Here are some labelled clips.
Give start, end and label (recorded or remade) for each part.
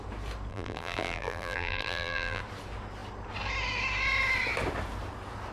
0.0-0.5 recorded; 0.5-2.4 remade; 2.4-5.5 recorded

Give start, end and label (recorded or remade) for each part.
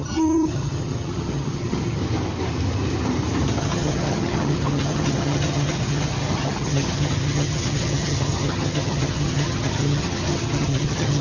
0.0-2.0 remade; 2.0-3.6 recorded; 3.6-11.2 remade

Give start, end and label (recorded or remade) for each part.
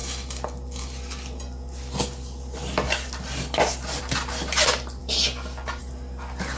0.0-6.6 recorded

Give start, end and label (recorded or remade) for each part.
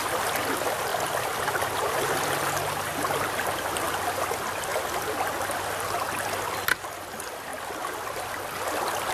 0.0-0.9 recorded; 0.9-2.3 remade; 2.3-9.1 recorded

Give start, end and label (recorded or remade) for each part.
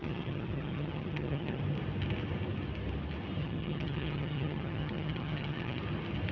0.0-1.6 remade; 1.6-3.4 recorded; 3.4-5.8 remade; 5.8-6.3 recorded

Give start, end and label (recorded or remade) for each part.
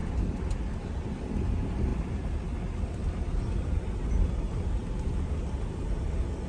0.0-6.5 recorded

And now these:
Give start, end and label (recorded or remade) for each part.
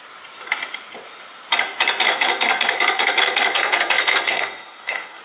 0.0-2.1 recorded; 2.1-5.2 remade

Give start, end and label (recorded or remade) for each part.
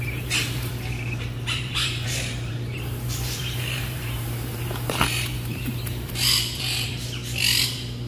0.0-7.2 remade; 7.2-8.1 recorded